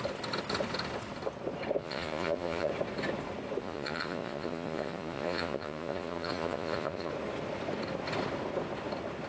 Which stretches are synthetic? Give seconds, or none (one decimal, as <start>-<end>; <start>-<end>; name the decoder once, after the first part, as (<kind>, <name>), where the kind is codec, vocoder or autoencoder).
1.8-2.7 (vocoder, Vocos); 3.6-7.1